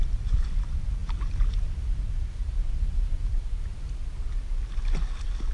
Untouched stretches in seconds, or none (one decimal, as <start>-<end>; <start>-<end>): 0.0-5.5